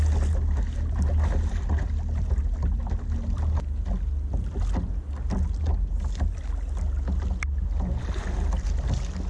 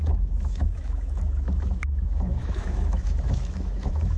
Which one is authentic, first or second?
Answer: first